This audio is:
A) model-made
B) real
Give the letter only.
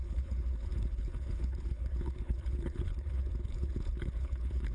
A